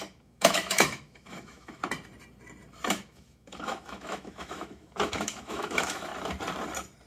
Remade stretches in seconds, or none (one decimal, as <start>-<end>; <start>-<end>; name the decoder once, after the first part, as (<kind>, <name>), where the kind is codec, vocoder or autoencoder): 0.0-1.8 (autoencoder, DAC-VAE); 2.9-6.1